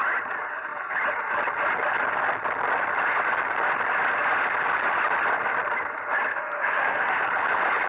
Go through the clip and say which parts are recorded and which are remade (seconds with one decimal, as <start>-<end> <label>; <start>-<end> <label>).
0.0-6.3 recorded; 6.3-7.2 remade; 7.2-7.9 recorded